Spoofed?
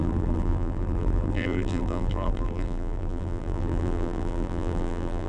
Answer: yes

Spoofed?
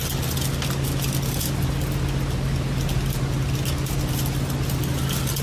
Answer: no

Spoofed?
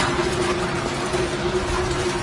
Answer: no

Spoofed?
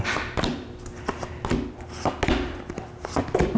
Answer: no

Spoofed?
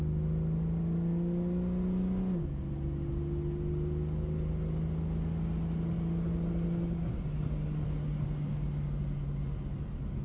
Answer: no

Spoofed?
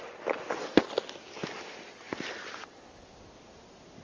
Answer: no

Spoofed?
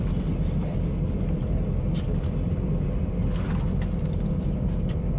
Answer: yes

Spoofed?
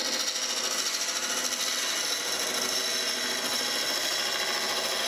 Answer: no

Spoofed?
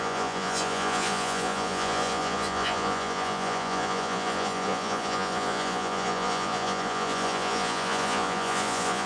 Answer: yes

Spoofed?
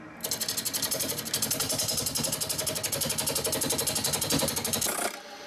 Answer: no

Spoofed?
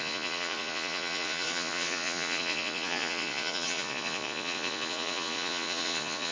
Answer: yes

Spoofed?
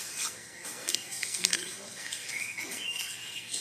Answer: yes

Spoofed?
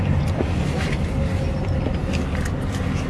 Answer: no